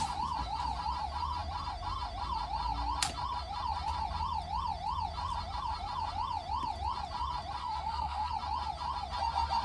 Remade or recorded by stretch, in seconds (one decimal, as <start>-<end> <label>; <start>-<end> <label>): 0.0-7.6 recorded; 7.6-8.3 remade; 8.3-9.6 recorded